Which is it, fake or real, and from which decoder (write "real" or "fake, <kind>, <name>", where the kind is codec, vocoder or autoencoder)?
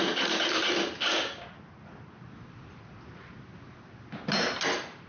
real